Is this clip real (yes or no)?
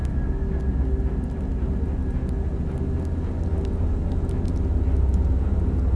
yes